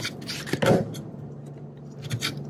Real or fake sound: real